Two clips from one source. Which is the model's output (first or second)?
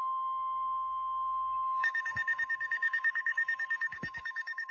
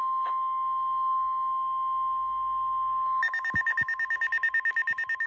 first